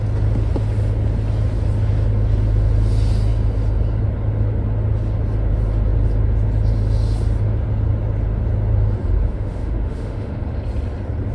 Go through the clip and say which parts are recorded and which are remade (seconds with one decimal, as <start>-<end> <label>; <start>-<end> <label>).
0.0-9.3 recorded; 9.3-10.4 remade; 10.4-11.3 recorded